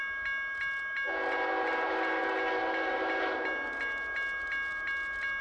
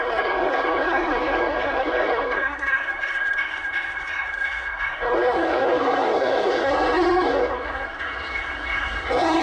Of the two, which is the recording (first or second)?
first